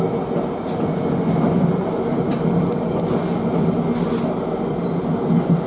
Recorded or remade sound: recorded